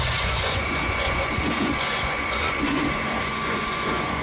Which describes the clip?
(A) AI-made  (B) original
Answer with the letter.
A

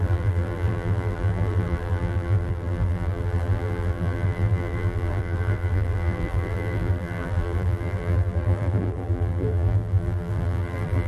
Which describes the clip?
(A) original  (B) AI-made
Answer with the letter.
B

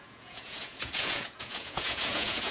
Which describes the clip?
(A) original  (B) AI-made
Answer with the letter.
B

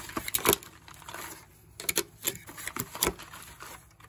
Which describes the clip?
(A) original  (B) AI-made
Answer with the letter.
A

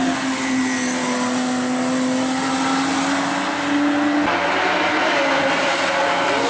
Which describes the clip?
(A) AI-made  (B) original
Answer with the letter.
B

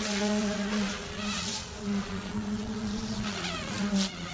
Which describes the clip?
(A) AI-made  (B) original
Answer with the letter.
A